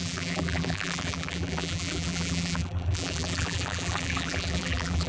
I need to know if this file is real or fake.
fake